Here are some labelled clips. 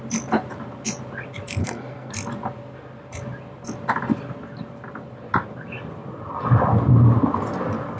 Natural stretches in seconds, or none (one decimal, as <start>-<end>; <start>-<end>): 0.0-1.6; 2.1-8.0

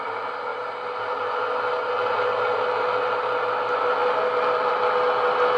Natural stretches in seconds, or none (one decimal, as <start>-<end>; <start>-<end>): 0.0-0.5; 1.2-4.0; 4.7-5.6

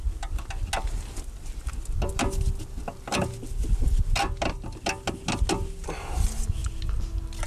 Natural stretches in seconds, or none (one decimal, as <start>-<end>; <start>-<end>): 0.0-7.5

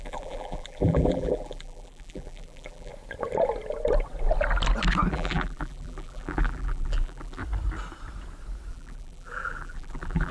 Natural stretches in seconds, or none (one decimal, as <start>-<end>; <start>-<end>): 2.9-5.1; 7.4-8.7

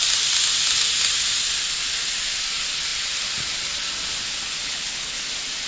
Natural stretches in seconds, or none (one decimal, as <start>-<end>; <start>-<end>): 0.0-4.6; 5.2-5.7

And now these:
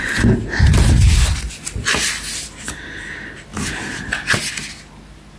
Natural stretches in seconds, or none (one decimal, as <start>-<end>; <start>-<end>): 0.0-5.4